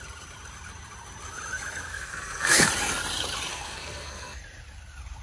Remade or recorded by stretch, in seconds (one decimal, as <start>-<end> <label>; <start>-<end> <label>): 0.0-1.9 recorded; 1.9-2.7 remade; 2.7-3.5 recorded; 3.5-4.4 remade; 4.4-5.2 recorded